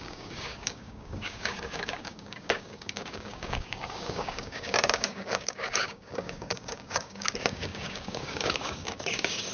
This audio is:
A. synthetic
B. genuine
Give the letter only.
A